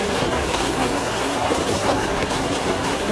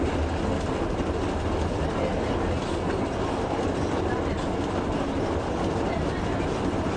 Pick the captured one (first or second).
second